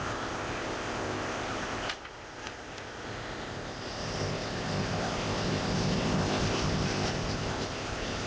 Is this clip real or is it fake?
fake